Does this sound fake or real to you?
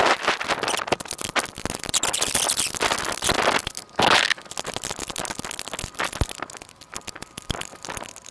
real